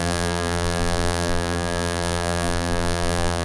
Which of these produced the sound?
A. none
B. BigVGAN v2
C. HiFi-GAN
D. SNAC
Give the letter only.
B